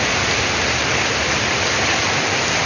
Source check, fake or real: real